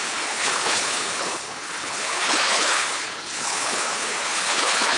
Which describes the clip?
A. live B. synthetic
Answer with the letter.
B